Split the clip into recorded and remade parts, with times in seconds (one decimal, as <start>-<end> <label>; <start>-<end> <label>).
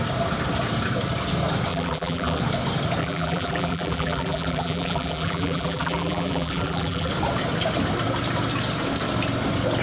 0.0-1.7 recorded; 1.7-2.4 remade; 2.4-3.0 recorded; 3.0-7.1 remade; 7.1-9.8 recorded